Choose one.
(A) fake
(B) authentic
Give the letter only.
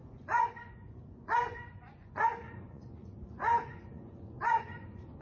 A